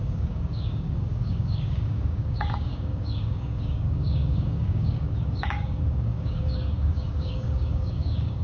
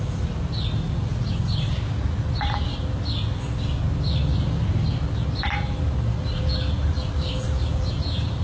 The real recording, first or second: second